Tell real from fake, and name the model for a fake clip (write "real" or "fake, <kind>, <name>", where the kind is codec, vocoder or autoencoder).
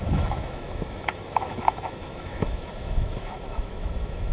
fake, autoencoder, DAC-VAE